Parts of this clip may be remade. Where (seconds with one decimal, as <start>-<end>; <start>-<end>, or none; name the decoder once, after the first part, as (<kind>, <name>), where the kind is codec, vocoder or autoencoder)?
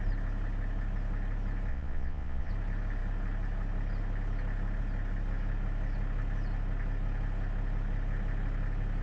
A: 1.7-2.5 (vocoder, Vocos)